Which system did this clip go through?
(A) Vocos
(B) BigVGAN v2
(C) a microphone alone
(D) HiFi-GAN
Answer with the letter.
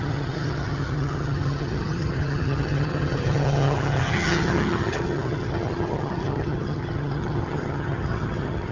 D